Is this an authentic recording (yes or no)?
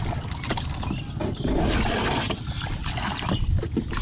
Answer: yes